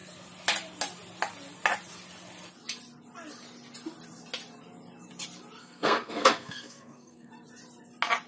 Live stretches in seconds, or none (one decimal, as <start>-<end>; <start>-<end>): 0.0-5.6; 7.3-8.3